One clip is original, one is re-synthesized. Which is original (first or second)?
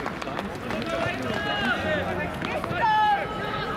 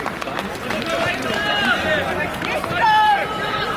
first